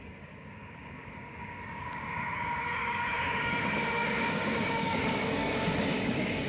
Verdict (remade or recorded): remade